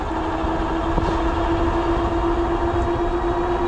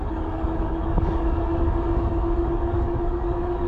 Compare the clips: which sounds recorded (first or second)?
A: first